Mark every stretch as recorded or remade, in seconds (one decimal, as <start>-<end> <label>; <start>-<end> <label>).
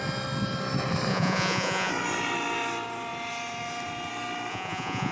0.0-1.1 recorded; 1.1-1.9 remade; 1.9-4.5 recorded; 4.5-5.1 remade